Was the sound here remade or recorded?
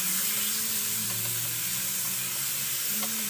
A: recorded